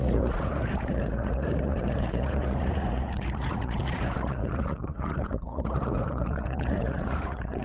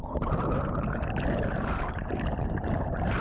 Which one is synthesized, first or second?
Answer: first